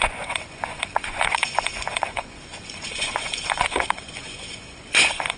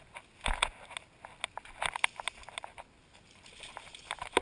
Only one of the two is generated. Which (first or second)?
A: first